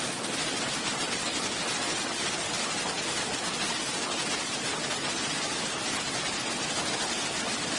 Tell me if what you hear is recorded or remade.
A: recorded